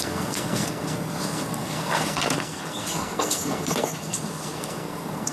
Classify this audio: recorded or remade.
remade